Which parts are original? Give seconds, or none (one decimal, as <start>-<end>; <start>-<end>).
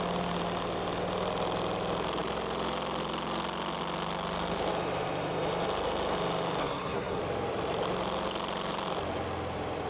0.0-6.6; 7.2-9.9